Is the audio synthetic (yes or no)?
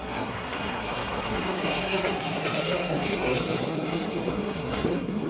yes